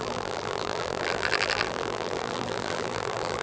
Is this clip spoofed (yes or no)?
yes